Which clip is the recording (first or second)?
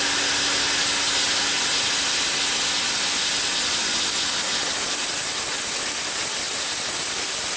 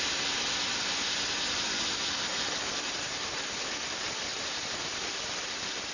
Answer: first